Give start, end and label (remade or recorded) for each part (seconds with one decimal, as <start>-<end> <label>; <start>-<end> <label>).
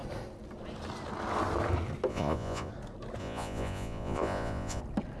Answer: 0.0-2.1 recorded; 2.1-2.7 remade; 2.7-3.2 recorded; 3.2-4.8 remade; 4.8-5.2 recorded